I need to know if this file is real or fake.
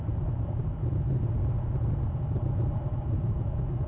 real